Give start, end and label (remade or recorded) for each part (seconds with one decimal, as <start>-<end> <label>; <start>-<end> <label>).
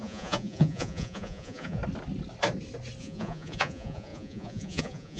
0.0-1.8 remade; 1.8-3.0 recorded; 3.0-5.2 remade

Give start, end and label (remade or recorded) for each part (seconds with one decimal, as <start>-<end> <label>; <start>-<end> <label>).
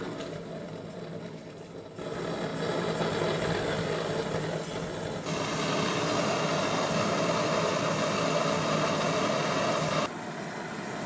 0.0-11.1 recorded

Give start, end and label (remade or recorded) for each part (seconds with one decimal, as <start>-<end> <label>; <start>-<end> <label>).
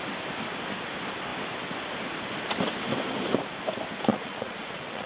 0.0-4.1 recorded; 4.1-5.1 remade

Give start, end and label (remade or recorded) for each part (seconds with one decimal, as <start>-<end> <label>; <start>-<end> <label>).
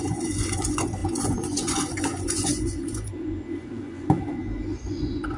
0.0-5.4 remade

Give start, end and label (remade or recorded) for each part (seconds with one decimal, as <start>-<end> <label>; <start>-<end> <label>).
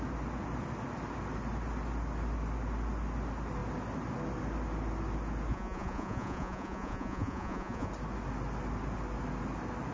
0.0-5.5 recorded; 5.5-7.9 remade; 7.9-9.9 recorded